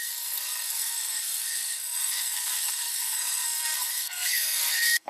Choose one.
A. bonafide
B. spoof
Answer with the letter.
B